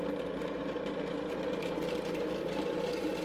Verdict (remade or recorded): recorded